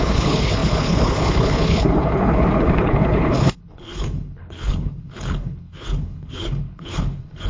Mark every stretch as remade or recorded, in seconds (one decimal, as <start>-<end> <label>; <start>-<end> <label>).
0.0-7.5 remade